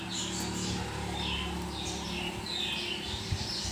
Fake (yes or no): no